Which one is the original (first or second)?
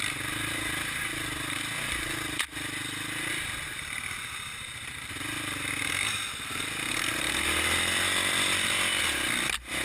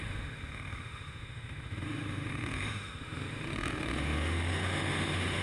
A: first